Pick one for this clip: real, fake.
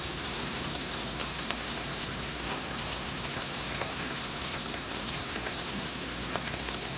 fake